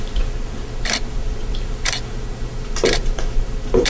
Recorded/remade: remade